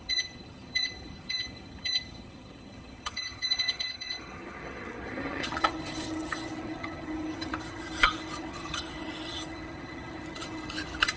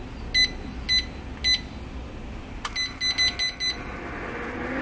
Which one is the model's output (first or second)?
first